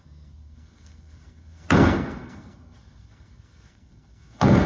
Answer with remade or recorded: remade